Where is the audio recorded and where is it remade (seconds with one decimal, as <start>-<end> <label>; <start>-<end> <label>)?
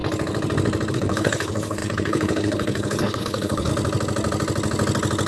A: 0.0-0.9 recorded; 0.9-3.7 remade; 3.7-5.3 recorded